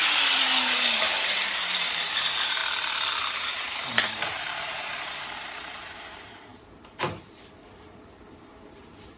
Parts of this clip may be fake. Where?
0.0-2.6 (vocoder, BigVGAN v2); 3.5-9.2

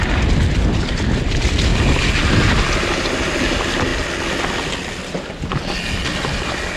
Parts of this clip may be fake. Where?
none

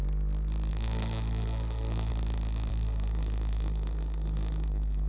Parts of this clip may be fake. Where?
0.7-2.1 (codec, SNAC); 2.7-5.1